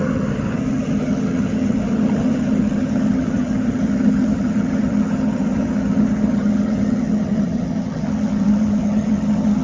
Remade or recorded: remade